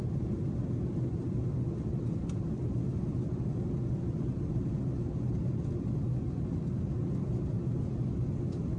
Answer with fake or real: real